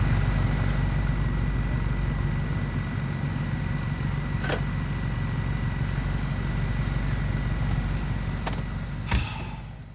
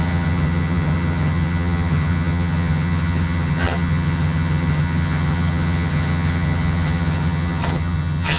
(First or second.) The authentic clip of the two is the first